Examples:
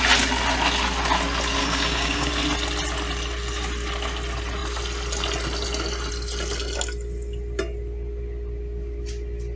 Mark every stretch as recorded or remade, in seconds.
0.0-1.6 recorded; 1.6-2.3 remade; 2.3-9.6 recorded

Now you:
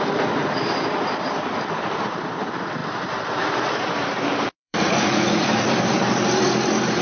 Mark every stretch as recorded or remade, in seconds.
0.0-2.8 recorded; 2.8-6.5 remade; 6.5-7.0 recorded

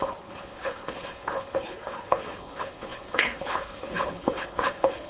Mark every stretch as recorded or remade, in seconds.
0.0-5.1 remade

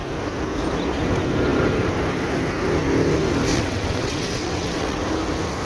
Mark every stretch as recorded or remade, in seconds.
0.0-3.5 recorded; 3.5-5.0 remade; 5.0-5.6 recorded